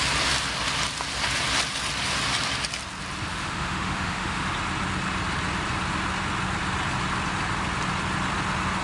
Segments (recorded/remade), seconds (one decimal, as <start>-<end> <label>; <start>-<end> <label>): 0.0-3.3 recorded; 3.3-4.5 remade; 4.5-8.8 recorded